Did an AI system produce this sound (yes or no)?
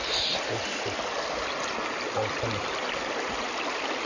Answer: no